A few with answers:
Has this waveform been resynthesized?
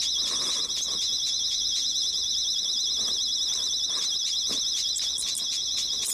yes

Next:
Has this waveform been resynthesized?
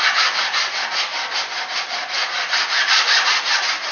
no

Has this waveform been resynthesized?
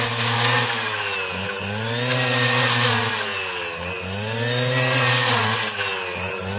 no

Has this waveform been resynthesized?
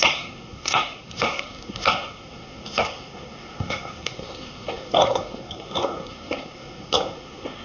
yes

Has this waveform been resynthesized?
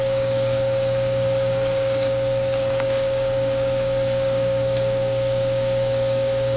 yes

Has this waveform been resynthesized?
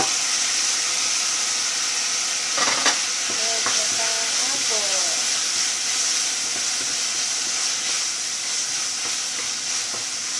no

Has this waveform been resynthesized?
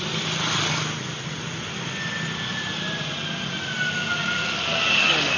no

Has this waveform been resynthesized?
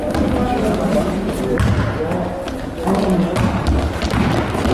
no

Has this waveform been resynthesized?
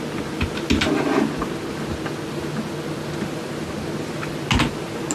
no